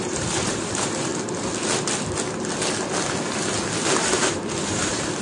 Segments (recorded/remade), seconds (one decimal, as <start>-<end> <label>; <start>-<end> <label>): 0.0-1.1 remade; 1.1-3.8 recorded; 3.8-5.2 remade

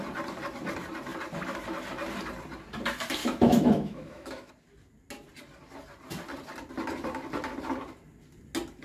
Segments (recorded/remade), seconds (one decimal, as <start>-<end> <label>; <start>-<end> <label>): 0.0-3.2 recorded; 3.2-4.5 remade; 4.5-8.8 recorded

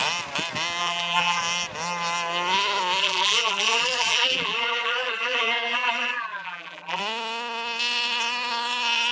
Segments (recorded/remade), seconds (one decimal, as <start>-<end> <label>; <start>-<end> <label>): 0.0-0.8 recorded; 0.8-1.4 remade; 1.4-3.0 recorded; 3.0-7.0 remade; 7.0-9.1 recorded

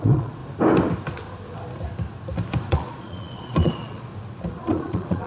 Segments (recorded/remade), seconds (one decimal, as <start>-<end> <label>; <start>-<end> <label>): 0.0-0.4 remade; 0.4-2.7 recorded; 2.7-4.1 remade; 4.1-4.6 recorded; 4.6-5.3 remade

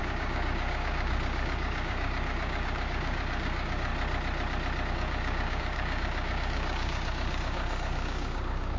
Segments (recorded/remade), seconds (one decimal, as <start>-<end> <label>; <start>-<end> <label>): 0.0-3.9 remade; 3.9-4.9 recorded; 4.9-8.8 remade

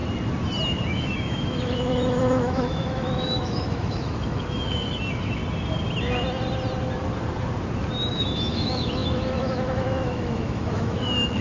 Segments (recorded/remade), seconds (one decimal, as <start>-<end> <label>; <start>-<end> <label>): 0.0-0.9 recorded; 0.9-5.4 remade; 5.4-8.1 recorded; 8.1-11.4 remade

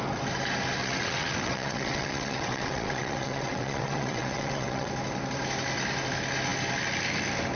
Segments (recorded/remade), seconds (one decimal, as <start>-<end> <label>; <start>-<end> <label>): 0.0-0.8 recorded; 0.8-4.9 remade; 4.9-7.6 recorded

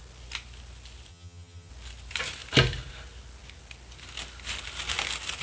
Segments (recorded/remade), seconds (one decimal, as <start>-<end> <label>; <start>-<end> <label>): 0.0-1.1 recorded; 1.1-1.7 remade; 1.7-5.4 recorded